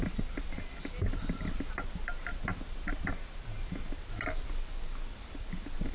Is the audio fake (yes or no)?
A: no